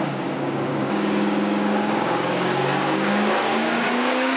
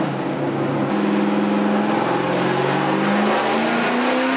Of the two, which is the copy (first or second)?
first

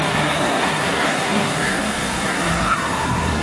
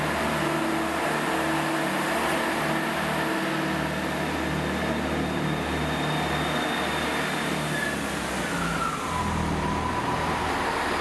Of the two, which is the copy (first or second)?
first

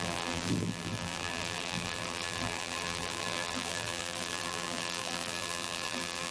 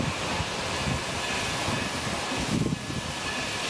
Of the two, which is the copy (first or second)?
first